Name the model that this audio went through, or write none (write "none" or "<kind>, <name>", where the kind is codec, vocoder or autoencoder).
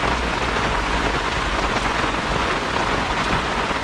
vocoder, Vocos